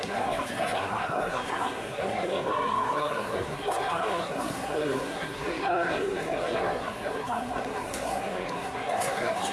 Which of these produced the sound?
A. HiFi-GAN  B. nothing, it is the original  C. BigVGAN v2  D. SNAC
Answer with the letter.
D